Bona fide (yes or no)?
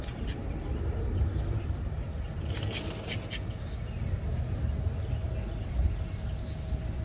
yes